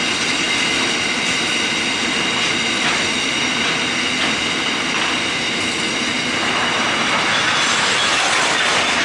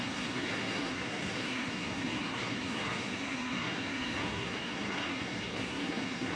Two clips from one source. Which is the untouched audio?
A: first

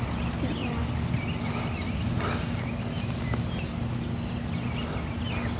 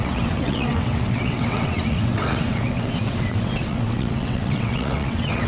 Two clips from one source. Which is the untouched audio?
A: first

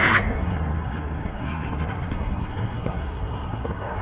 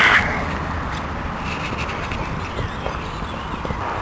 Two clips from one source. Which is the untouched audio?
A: second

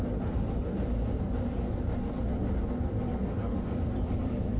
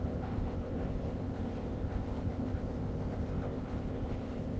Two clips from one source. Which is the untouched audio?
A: first